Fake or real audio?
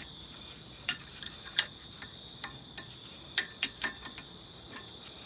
fake